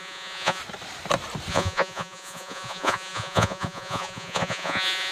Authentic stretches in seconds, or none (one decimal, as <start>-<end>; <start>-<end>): 0.6-1.5